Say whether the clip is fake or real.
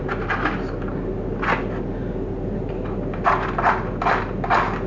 real